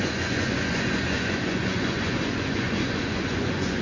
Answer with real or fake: fake